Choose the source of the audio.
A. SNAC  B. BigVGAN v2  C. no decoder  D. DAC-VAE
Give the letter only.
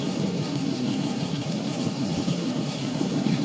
A